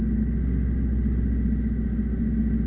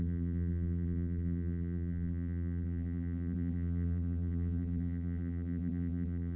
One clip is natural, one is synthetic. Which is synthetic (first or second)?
second